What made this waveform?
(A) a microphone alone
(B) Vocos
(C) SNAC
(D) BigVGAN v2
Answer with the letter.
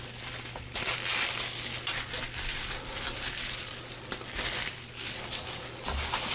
A